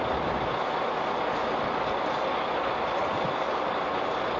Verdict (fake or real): real